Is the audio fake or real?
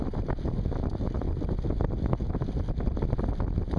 real